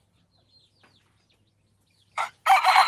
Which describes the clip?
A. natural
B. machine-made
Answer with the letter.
A